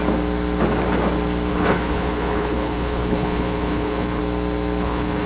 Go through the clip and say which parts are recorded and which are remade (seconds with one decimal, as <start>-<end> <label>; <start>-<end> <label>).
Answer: 0.0-1.5 recorded; 1.5-4.2 remade; 4.2-4.8 recorded; 4.8-5.3 remade